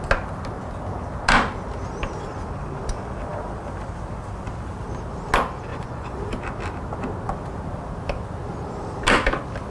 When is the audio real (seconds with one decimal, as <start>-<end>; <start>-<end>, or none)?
0.0-5.7; 6.2-9.7